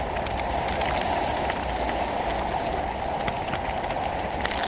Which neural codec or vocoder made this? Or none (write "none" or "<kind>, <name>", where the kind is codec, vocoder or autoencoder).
none